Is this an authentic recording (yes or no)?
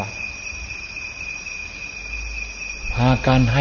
yes